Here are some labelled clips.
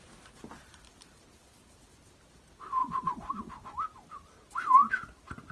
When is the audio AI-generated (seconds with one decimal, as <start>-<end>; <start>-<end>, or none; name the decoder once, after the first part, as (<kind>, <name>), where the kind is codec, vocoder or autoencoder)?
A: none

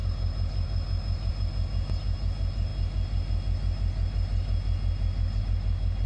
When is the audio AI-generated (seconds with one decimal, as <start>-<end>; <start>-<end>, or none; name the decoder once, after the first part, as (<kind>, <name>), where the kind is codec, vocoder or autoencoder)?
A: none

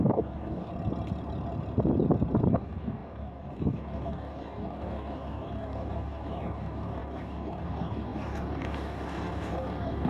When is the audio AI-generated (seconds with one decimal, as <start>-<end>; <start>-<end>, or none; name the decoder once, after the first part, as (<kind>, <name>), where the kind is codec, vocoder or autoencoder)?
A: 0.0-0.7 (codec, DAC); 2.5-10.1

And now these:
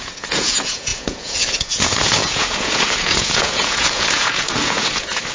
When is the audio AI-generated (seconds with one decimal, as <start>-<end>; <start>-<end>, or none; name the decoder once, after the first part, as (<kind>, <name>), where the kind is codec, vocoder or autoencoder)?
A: 0.0-5.3 (vocoder, Vocos)

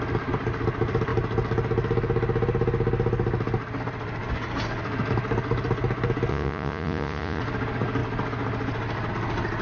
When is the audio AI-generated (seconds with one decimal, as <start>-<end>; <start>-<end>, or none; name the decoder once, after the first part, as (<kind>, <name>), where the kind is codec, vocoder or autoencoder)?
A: 6.3-7.4 (vocoder, Vocos)